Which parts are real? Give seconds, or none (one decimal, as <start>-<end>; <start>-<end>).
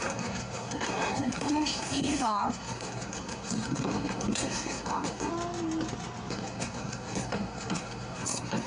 5.3-6.3